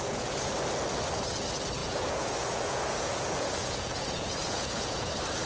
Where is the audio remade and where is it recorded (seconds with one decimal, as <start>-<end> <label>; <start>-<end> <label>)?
0.0-0.5 remade; 0.5-1.8 recorded; 1.8-5.1 remade; 5.1-5.5 recorded